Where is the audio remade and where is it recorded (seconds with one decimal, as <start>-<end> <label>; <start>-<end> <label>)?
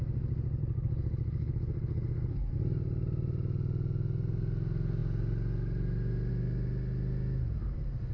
0.0-0.6 recorded; 0.6-2.5 remade; 2.5-8.1 recorded